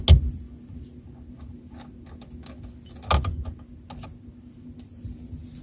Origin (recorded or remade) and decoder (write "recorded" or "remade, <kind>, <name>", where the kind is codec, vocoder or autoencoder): recorded